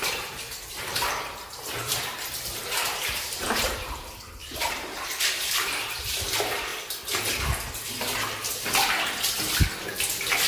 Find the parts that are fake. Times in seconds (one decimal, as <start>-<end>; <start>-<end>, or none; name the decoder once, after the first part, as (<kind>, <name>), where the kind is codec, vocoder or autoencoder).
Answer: 0.0-6.7 (vocoder, BigVGAN v2)